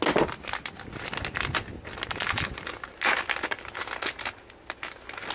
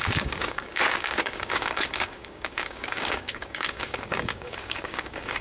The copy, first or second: second